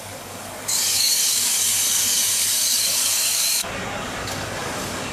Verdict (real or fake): fake